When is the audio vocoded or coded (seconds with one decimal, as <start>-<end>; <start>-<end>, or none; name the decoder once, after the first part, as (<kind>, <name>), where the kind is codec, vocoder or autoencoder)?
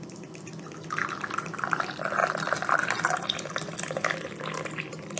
none